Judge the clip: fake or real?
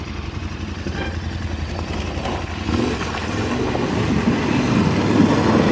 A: real